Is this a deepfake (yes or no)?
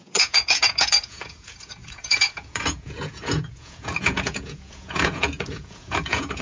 yes